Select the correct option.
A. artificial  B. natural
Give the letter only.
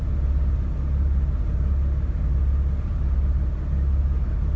B